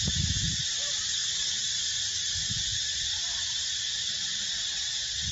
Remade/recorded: remade